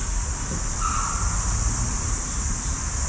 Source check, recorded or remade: recorded